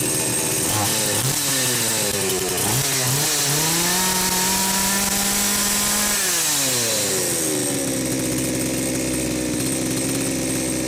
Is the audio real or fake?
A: real